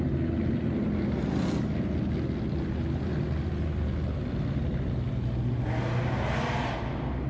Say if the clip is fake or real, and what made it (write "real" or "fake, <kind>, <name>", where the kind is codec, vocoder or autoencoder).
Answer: real